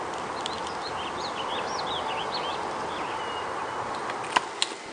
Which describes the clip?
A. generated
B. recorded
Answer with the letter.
B